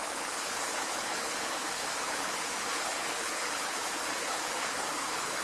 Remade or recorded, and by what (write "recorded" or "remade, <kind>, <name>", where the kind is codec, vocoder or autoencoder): remade, codec, HILCodec